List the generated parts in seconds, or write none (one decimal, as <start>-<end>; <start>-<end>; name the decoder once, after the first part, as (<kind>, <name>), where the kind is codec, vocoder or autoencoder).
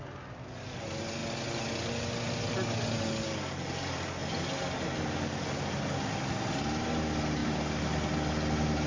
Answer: none